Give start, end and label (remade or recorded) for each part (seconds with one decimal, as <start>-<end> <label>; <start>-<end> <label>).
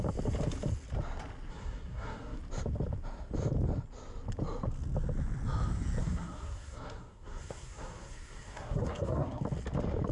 0.0-1.5 recorded; 1.5-2.4 remade; 2.4-6.0 recorded; 6.0-9.4 remade; 9.4-10.1 recorded